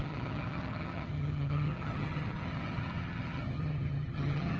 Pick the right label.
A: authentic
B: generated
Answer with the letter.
B